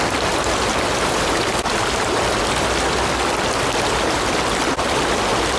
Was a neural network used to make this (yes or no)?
no